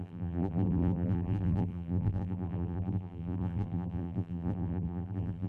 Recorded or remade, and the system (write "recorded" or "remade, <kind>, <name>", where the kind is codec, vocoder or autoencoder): remade, vocoder, BigVGAN v2